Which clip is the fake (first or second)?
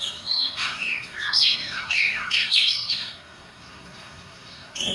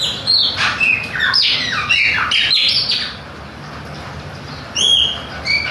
first